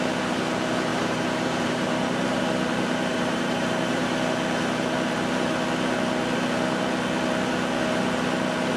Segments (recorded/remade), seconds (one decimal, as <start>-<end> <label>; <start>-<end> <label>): 0.0-0.9 recorded; 0.9-2.4 remade; 2.4-3.1 recorded; 3.1-4.1 remade; 4.1-8.8 recorded